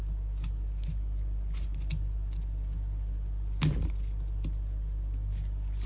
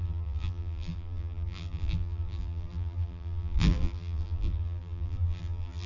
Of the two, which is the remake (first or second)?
second